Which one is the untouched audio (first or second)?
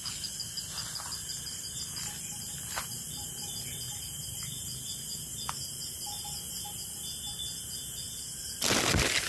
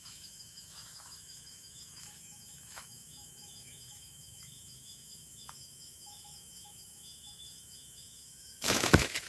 first